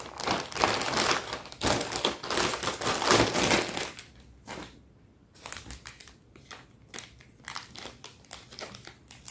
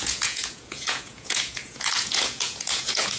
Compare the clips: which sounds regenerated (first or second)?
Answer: second